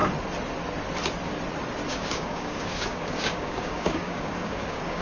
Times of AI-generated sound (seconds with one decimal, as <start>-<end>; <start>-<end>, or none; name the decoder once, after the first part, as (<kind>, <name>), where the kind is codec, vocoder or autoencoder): 1.9-5.0 (codec, DAC)